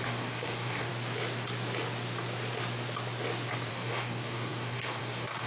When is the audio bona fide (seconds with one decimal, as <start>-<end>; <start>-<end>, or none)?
0.9-3.7